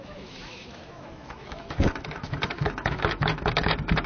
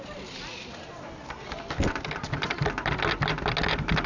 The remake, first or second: first